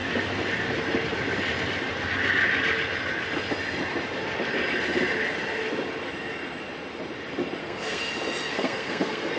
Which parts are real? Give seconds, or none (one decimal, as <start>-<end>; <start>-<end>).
0.0-7.6; 8.1-8.5